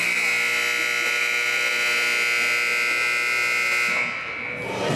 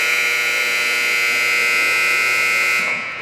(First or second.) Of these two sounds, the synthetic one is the second